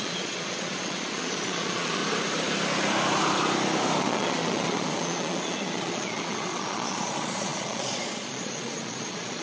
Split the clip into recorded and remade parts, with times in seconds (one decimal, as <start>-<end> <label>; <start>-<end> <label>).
0.0-2.0 remade; 2.0-4.0 recorded; 4.0-9.4 remade